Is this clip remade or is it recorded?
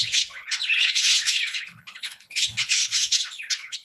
remade